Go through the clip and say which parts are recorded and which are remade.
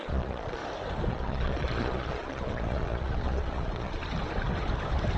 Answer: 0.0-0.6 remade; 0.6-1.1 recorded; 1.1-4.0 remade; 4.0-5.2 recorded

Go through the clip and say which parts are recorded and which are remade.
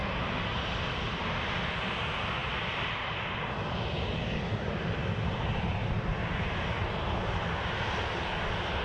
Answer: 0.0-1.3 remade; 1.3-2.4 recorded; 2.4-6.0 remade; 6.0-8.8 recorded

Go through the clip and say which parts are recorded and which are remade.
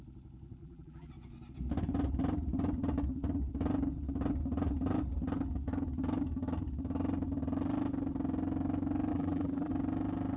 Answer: 0.0-0.6 recorded; 0.6-1.1 remade; 1.1-9.1 recorded; 9.1-9.7 remade; 9.7-10.4 recorded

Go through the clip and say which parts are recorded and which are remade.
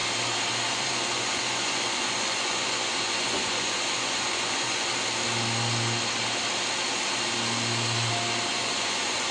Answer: 0.0-0.7 recorded; 0.7-4.9 remade; 4.9-8.5 recorded; 8.5-9.3 remade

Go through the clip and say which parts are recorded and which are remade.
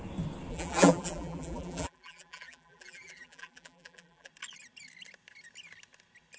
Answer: 0.0-0.5 recorded; 0.5-4.3 remade; 4.3-6.4 recorded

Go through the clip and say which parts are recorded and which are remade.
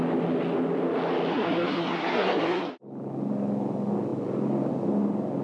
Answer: 0.0-1.3 recorded; 1.3-2.7 remade; 2.7-5.4 recorded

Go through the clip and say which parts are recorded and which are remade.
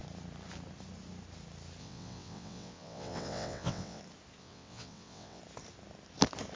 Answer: 0.0-1.8 recorded; 1.8-4.0 remade; 4.0-4.4 recorded; 4.4-5.4 remade; 5.4-6.6 recorded